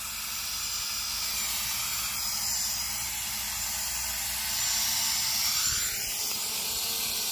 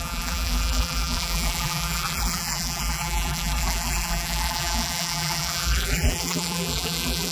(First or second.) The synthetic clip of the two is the second